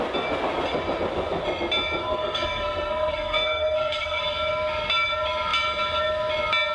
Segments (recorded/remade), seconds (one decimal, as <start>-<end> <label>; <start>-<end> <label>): 0.0-2.0 recorded; 2.0-4.2 remade; 4.2-6.7 recorded